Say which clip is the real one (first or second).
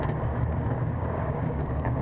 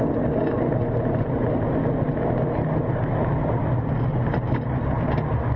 second